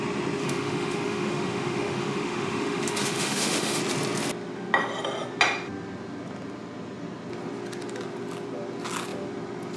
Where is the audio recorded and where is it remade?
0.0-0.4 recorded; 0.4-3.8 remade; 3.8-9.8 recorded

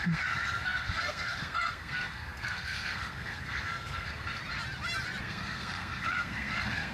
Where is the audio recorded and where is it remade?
0.0-4.4 remade; 4.4-5.2 recorded; 5.2-6.9 remade

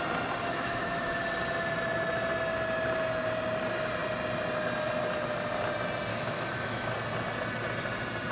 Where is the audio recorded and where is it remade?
0.0-0.4 recorded; 0.4-1.2 remade; 1.2-6.1 recorded; 6.1-6.9 remade; 6.9-8.3 recorded